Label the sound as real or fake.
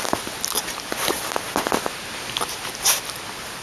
real